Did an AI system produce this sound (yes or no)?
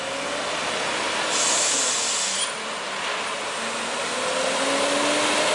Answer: no